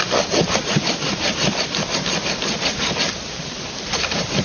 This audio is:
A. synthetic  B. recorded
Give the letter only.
B